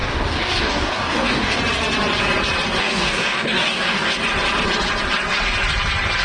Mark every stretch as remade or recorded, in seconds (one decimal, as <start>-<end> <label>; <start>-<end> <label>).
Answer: 0.0-1.6 remade; 1.6-2.8 recorded; 2.8-4.1 remade; 4.1-6.2 recorded